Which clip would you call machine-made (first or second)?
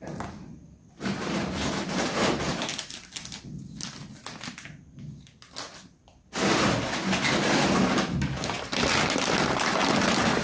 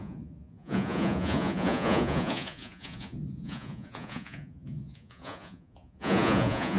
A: second